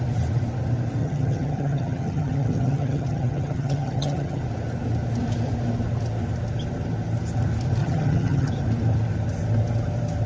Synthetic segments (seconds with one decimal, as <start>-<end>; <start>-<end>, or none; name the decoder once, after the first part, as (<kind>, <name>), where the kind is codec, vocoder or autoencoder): 1.0-4.4 (vocoder, HiFi-GAN); 7.8-8.5